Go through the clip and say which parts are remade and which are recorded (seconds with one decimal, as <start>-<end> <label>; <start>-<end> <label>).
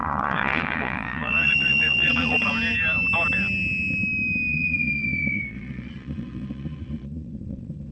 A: 0.0-2.5 remade; 2.5-4.5 recorded; 4.5-7.9 remade